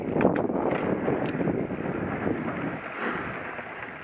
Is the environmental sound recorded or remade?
recorded